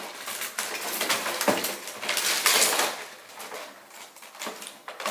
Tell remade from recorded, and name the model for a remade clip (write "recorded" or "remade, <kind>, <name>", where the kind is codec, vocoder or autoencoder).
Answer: recorded